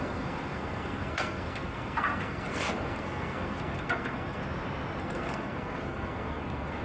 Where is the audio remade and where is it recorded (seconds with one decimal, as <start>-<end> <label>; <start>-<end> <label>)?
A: 0.0-4.4 remade; 4.4-5.0 recorded; 5.0-6.8 remade